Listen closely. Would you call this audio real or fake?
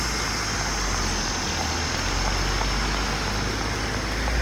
real